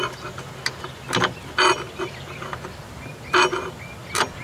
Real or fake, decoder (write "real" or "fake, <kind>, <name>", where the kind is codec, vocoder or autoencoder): real